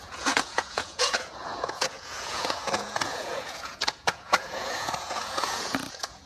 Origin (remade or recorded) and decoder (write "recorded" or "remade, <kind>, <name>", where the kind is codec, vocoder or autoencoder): remade, vocoder, Vocos